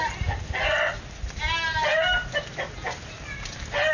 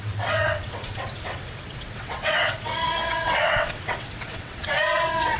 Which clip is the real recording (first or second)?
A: first